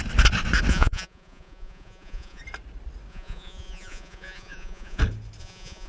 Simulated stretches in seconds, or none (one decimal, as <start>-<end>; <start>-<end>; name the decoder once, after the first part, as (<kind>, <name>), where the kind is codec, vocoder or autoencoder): 0.7-2.4 (vocoder, Vocos); 3.1-5.0; 5.4-5.9